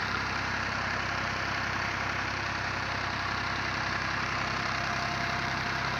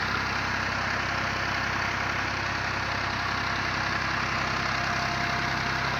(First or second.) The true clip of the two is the second